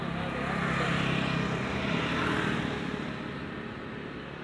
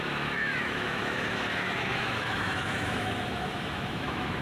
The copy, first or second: second